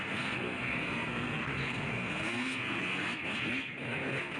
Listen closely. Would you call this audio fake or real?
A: fake